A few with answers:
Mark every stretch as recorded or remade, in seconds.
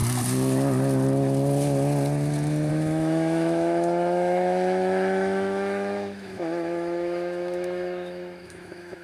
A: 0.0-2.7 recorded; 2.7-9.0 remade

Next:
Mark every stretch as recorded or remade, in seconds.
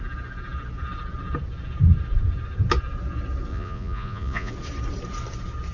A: 0.0-3.5 recorded; 3.5-4.5 remade; 4.5-5.7 recorded